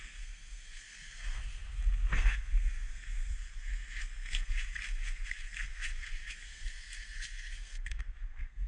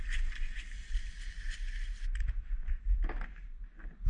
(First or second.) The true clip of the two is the second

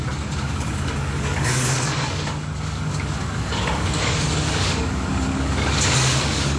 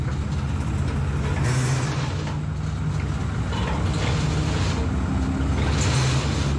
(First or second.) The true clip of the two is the second